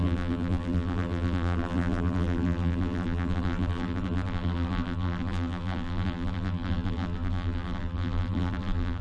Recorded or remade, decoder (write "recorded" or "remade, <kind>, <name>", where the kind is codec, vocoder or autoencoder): remade, vocoder, BigVGAN v2